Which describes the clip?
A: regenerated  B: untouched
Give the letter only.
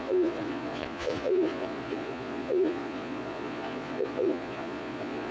A